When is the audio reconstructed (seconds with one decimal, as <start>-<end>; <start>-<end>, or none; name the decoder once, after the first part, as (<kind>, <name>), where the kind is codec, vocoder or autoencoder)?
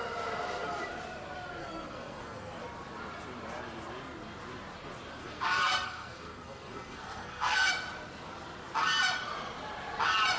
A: 1.6-2.6 (codec, SNAC); 5.2-7.7